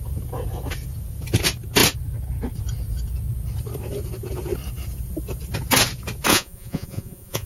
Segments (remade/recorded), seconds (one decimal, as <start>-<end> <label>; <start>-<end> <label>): 0.0-6.3 recorded; 6.3-7.5 remade